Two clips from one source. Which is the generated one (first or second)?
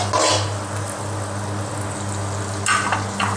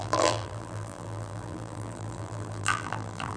second